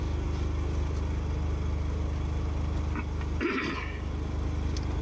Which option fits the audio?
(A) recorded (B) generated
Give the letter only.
A